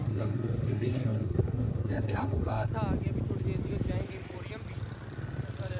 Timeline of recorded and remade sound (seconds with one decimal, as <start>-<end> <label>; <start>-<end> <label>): 0.0-2.7 remade; 2.7-5.8 recorded

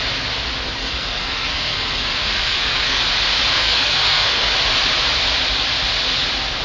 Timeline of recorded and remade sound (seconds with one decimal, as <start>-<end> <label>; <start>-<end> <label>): 0.0-0.8 recorded; 0.8-3.0 remade; 3.0-3.5 recorded; 3.5-4.5 remade; 4.5-6.6 recorded

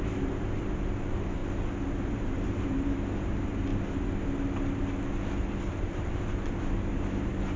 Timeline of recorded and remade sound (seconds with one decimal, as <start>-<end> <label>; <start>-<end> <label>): 0.0-1.4 remade; 1.4-1.9 recorded; 1.9-3.7 remade; 3.7-5.7 recorded; 5.7-7.6 remade

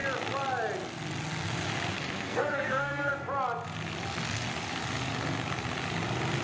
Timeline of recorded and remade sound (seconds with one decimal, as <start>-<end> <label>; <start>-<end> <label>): 0.0-1.9 recorded; 1.9-3.1 remade; 3.1-6.4 recorded

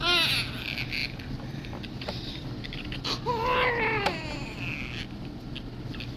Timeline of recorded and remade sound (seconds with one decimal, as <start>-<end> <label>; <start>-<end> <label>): 0.0-6.2 recorded

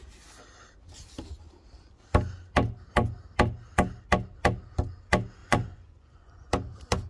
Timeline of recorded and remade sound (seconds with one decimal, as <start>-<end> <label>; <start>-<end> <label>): 0.0-5.4 recorded; 5.4-6.5 remade; 6.5-7.1 recorded

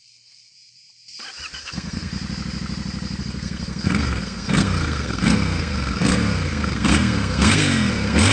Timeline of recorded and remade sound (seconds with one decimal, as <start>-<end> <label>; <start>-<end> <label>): 0.0-0.5 remade; 0.5-1.6 recorded; 1.6-2.1 remade; 2.1-3.2 recorded; 3.2-8.3 remade